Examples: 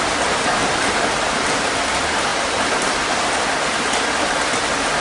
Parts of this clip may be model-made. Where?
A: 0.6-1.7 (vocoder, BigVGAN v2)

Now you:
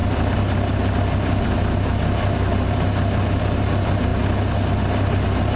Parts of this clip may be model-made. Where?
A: none

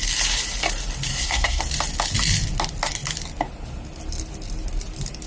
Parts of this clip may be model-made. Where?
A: 1.1-1.6 (codec, SNAC)

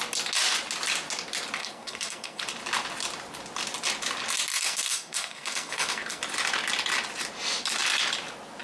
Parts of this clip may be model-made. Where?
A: 1.6-2.4 (codec, SNAC); 4.5-6.2

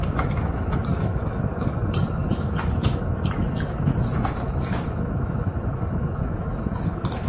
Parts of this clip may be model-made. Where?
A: 0.0-7.3 (autoencoder, DAC-VAE)

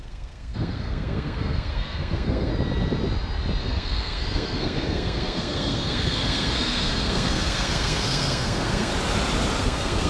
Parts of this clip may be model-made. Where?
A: 0.0-2.5 (codec, SNAC); 3.6-8.9; 9.6-10.1

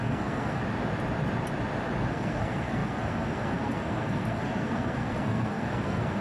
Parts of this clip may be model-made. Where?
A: 0.0-0.6 (codec, SNAC); 2.1-6.2

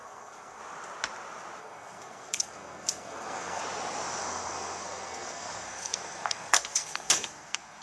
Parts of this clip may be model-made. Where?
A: 0.0-0.6 (codec, SNAC); 1.6-3.6; 4.2-7.8